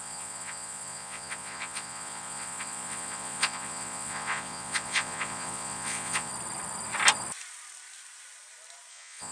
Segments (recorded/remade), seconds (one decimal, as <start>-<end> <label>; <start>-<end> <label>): 0.0-6.3 remade; 6.3-8.9 recorded; 8.9-9.3 remade

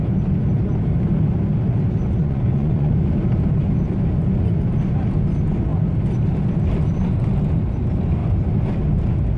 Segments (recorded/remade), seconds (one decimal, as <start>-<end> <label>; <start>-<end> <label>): 0.0-2.2 recorded; 2.2-2.9 remade; 2.9-9.4 recorded

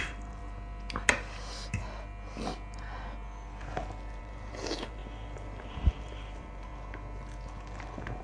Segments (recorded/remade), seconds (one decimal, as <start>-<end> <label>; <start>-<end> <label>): 0.0-0.4 remade; 0.4-4.2 recorded; 4.2-6.7 remade; 6.7-8.2 recorded

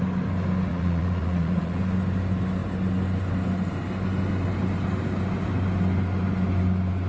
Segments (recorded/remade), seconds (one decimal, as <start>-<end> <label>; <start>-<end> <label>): 0.0-0.7 recorded; 0.7-1.8 remade; 1.8-7.1 recorded

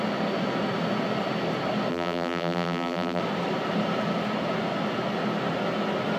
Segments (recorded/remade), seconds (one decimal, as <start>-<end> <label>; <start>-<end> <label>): 0.0-1.9 recorded; 1.9-3.2 remade; 3.2-6.2 recorded

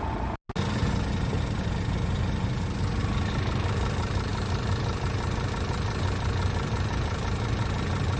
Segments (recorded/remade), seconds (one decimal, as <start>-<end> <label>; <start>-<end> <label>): 0.0-8.2 recorded

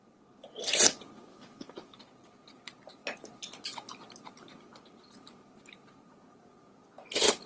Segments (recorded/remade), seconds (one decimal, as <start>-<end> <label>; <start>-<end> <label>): 0.0-1.3 recorded; 1.3-2.0 remade; 2.0-7.5 recorded

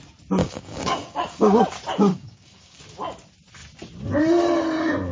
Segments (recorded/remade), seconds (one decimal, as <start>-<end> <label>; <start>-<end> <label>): 0.0-0.4 recorded; 0.4-1.6 remade; 1.6-2.1 recorded; 2.1-2.8 remade; 2.8-5.1 recorded